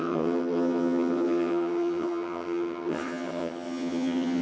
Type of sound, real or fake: fake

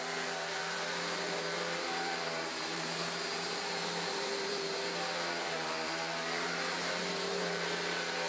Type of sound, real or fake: fake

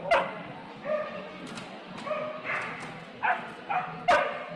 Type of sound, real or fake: real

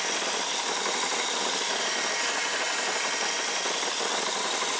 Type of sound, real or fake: fake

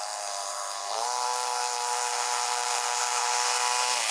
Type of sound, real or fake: fake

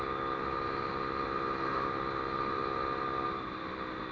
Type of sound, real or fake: real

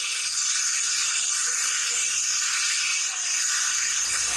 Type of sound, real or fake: real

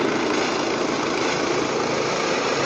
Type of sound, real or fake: real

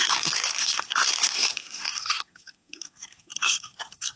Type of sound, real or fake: fake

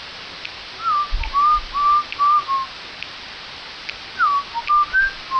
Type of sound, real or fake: real